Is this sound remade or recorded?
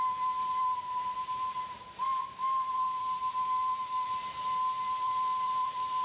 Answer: remade